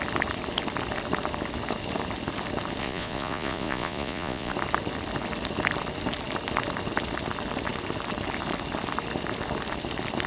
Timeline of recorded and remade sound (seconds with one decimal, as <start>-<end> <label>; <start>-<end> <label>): 0.0-2.8 recorded; 2.8-4.5 remade; 4.5-10.3 recorded